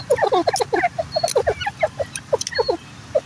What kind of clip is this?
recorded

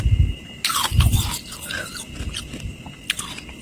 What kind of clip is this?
recorded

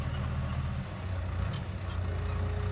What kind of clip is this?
recorded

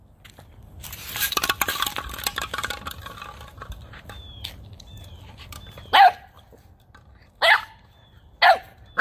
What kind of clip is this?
recorded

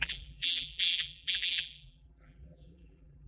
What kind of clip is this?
remade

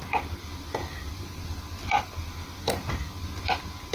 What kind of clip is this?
recorded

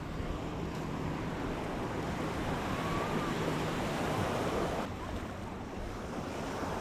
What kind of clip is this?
remade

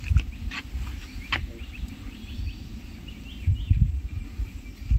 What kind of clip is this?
recorded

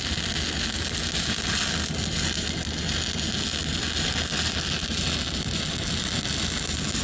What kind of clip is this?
recorded